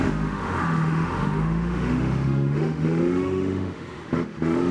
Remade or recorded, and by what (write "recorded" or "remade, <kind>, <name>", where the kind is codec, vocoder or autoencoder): remade, autoencoder, DAC-VAE